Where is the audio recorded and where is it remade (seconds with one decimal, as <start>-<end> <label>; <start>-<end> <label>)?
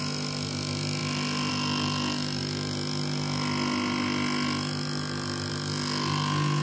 0.0-6.6 recorded